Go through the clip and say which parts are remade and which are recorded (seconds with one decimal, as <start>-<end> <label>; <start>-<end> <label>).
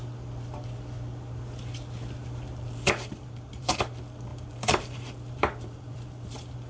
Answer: 0.0-2.2 recorded; 2.2-3.8 remade; 3.8-4.3 recorded; 4.3-6.7 remade